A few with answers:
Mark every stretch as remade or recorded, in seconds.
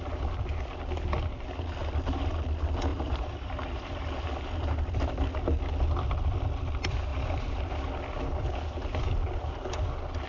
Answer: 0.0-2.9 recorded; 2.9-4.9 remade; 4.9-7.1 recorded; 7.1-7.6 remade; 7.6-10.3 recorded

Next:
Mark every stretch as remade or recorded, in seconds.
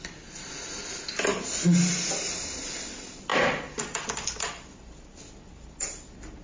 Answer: 0.0-6.4 recorded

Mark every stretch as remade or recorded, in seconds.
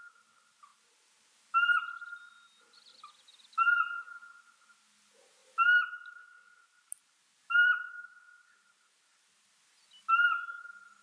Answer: 0.0-11.0 recorded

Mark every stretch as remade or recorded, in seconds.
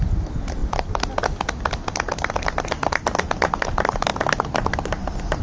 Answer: 0.0-0.6 recorded; 0.6-3.5 remade; 3.5-5.4 recorded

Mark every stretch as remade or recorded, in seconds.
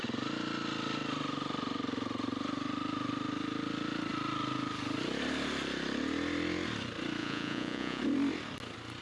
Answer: 0.0-7.2 recorded; 7.2-8.0 remade; 8.0-9.0 recorded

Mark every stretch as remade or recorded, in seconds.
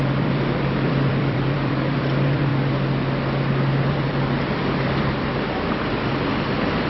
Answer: 0.0-2.5 remade; 2.5-3.8 recorded; 3.8-6.9 remade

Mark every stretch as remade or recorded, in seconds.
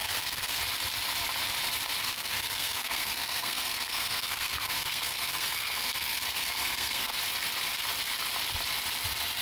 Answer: 0.0-0.6 remade; 0.6-2.0 recorded; 2.0-7.2 remade; 7.2-9.4 recorded